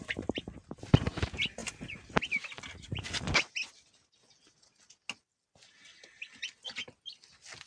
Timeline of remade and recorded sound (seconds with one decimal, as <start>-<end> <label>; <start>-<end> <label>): 0.0-7.7 recorded